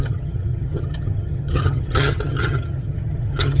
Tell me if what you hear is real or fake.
fake